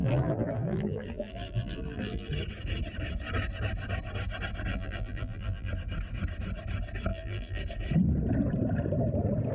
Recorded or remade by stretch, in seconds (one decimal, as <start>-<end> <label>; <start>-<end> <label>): 0.0-2.3 remade; 2.3-4.7 recorded; 4.7-5.7 remade; 5.7-7.1 recorded; 7.1-7.6 remade; 7.6-9.5 recorded